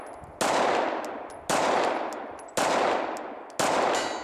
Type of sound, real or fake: real